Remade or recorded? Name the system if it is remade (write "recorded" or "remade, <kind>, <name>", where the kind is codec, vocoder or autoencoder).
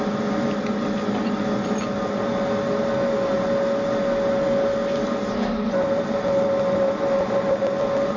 recorded